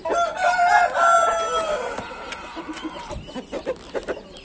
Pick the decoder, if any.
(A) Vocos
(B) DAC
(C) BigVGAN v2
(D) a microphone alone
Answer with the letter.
D